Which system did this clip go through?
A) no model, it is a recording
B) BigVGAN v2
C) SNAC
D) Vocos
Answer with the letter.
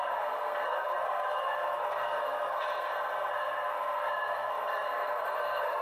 C